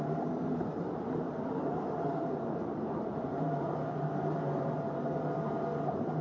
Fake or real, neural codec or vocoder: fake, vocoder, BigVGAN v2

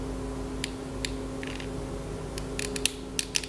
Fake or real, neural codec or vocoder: real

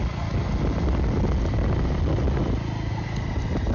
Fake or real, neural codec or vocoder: real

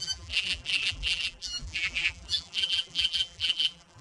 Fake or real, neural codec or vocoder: fake, vocoder, BigVGAN v2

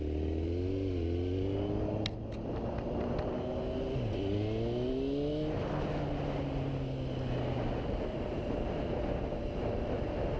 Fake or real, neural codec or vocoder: real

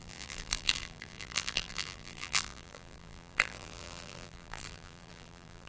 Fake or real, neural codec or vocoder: fake, vocoder, BigVGAN v2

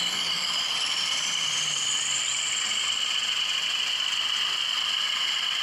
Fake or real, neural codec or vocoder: fake, vocoder, BigVGAN v2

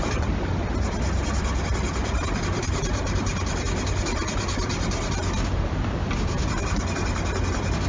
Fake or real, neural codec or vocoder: fake, vocoder, BigVGAN v2